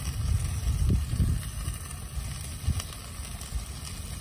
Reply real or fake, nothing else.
real